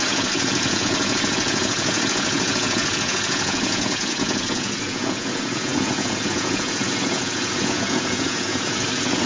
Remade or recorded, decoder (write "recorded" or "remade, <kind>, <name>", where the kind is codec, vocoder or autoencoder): remade, vocoder, Vocos